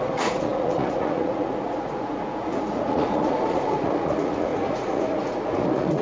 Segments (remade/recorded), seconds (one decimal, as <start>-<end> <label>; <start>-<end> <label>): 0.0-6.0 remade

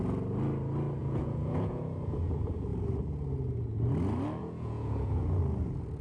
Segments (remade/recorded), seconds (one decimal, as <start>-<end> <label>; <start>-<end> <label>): 0.0-1.0 recorded; 1.0-1.8 remade; 1.8-4.4 recorded; 4.4-5.4 remade; 5.4-6.0 recorded

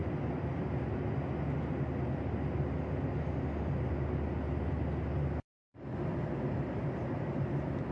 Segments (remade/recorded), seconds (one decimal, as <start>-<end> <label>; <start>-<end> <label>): 0.0-7.9 recorded

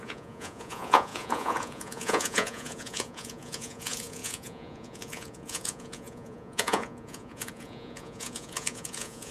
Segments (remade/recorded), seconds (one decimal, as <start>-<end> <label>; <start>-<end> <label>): 0.0-9.3 remade